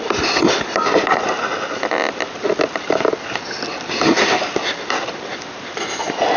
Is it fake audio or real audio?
real